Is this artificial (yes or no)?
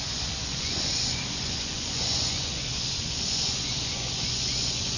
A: yes